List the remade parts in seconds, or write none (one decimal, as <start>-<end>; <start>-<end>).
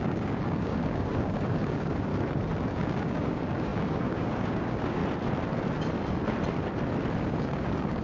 0.0-2.1; 2.7-5.0; 7.2-8.0